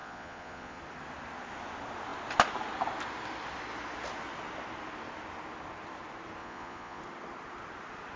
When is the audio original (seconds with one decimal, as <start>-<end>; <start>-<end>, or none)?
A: 0.8-6.4; 7.0-8.2